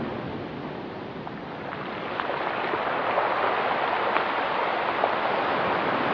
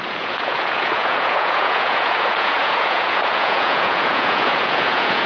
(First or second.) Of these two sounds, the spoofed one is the second